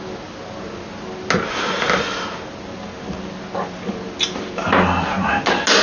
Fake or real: real